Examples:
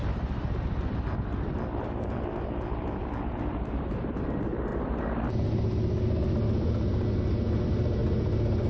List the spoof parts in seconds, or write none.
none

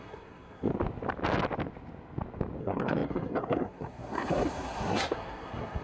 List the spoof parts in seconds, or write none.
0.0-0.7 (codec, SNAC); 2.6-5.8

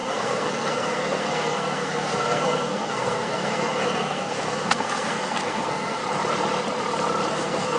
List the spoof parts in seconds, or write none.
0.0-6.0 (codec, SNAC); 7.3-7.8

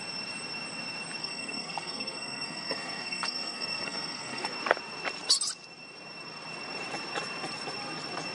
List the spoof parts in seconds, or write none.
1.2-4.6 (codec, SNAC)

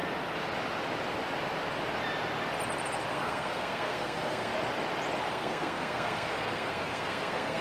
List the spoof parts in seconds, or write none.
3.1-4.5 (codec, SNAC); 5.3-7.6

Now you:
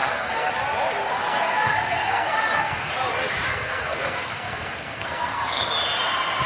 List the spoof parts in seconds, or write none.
0.0-0.5 (codec, SNAC); 1.0-2.9; 3.5-5.7

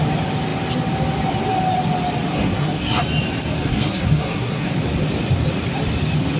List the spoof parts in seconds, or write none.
2.3-3.0 (codec, SNAC); 3.6-4.7